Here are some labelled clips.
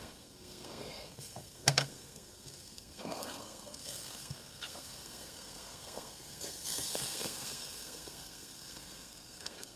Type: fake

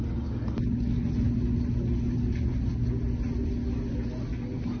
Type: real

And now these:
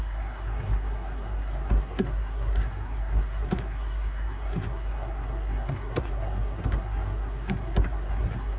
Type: fake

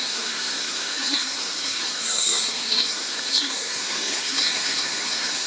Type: fake